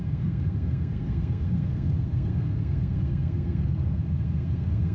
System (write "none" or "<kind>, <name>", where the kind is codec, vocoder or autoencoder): codec, SNAC